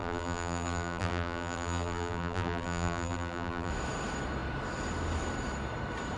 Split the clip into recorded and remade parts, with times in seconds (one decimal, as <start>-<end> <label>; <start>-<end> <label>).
0.0-3.7 remade; 3.7-6.2 recorded